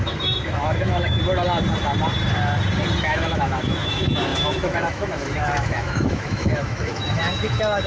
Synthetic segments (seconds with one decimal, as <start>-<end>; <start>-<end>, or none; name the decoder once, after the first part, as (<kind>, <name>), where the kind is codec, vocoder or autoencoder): 0.0-1.2 (autoencoder, DAC-VAE); 3.0-7.9